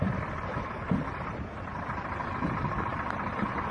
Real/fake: real